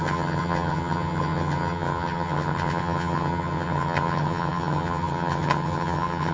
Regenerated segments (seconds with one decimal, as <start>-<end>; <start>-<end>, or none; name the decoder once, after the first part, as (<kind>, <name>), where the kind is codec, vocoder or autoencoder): 0.0-6.3 (vocoder, HiFi-GAN)